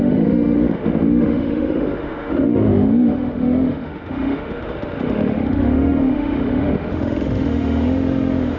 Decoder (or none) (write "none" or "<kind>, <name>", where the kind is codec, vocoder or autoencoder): autoencoder, DAC-VAE